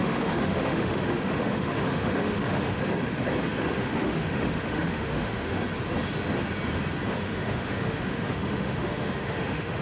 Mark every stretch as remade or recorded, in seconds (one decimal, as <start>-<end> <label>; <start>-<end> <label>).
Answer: 0.0-2.8 remade; 2.8-3.6 recorded; 3.6-5.6 remade; 5.6-7.1 recorded; 7.1-9.8 remade